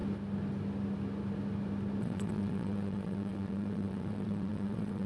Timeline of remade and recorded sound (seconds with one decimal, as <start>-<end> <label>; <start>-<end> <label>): 0.0-2.0 recorded; 2.0-5.1 remade